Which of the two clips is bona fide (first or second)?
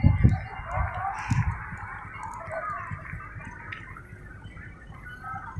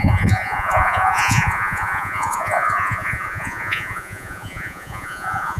first